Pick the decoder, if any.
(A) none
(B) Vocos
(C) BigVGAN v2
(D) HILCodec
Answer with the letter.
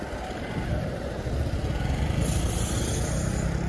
A